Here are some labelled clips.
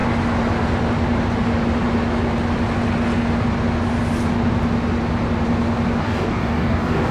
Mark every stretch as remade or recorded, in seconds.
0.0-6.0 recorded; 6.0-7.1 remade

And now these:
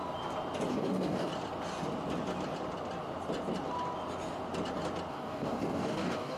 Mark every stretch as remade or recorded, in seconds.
0.0-0.7 recorded; 0.7-1.3 remade; 1.3-5.1 recorded; 5.1-6.4 remade

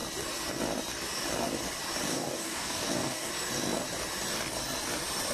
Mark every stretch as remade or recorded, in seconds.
0.0-2.1 recorded; 2.1-3.3 remade; 3.3-5.3 recorded

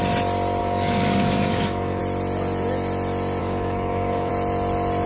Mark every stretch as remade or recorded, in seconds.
0.0-0.6 recorded; 0.6-2.0 remade; 2.0-3.4 recorded; 3.4-4.3 remade; 4.3-5.1 recorded

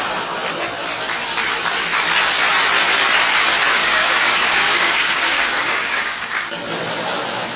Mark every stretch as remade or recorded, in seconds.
0.0-3.8 recorded; 3.8-6.5 remade; 6.5-7.6 recorded

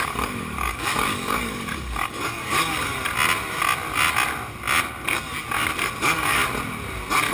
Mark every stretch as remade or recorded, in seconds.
0.0-2.9 remade; 2.9-6.0 recorded; 6.0-6.4 remade; 6.4-7.3 recorded

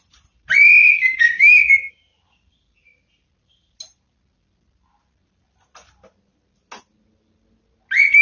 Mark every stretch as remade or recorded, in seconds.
0.0-0.8 recorded; 0.8-1.7 remade; 1.7-8.2 recorded